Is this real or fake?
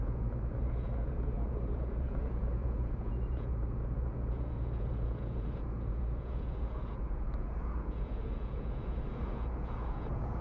fake